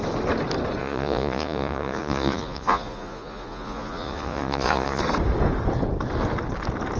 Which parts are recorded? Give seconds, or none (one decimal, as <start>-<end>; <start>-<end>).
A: 0.0-0.8; 5.0-7.0